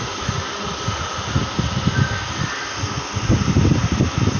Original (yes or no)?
yes